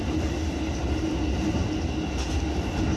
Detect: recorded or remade recorded